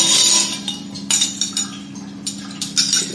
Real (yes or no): yes